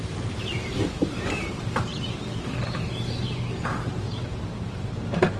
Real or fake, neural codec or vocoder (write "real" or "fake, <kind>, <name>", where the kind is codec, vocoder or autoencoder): fake, vocoder, BigVGAN v2